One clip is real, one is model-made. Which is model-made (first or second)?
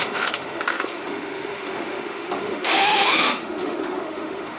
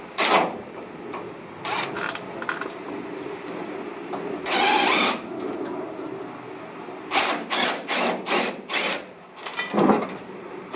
first